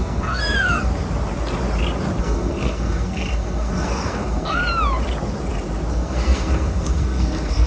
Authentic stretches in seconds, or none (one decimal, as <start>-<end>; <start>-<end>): 0.9-2.2; 4.6-5.9